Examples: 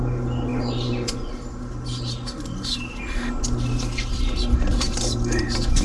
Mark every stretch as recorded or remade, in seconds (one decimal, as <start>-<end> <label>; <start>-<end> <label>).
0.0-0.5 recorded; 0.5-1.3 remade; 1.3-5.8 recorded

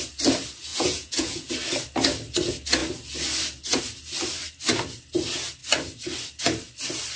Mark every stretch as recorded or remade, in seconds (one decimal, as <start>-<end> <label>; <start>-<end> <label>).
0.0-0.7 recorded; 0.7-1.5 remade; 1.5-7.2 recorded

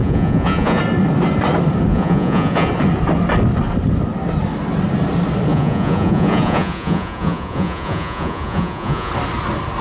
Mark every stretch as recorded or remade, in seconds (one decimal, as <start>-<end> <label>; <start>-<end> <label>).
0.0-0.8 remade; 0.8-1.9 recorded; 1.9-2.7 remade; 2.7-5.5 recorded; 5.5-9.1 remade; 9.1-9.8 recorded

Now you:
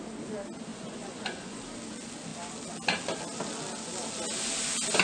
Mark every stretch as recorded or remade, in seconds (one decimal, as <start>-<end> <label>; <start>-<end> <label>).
0.0-0.7 recorded; 0.7-1.6 remade; 1.6-5.0 recorded

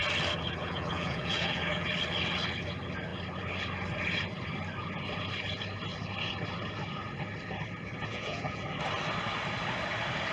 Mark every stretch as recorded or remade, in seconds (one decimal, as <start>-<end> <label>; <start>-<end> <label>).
0.0-0.6 recorded; 0.6-1.9 remade; 1.9-8.1 recorded; 8.1-8.6 remade; 8.6-10.3 recorded

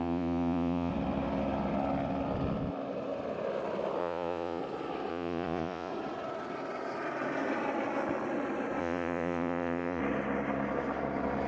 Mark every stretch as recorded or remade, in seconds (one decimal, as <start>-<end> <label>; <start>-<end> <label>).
0.0-0.9 remade; 0.9-4.0 recorded; 4.0-4.6 remade; 4.6-5.1 recorded; 5.1-5.9 remade; 5.9-8.8 recorded; 8.8-10.0 remade; 10.0-11.5 recorded

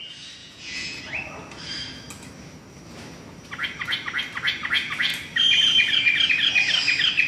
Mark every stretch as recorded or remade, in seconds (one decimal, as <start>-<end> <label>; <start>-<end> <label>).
0.0-0.4 recorded; 0.4-1.0 remade; 1.0-7.3 recorded

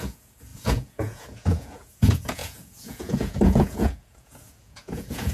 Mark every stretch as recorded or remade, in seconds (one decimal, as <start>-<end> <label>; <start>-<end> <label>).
0.0-5.3 remade